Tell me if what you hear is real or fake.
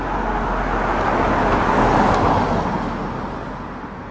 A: real